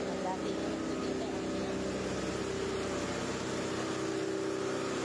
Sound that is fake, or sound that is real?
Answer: real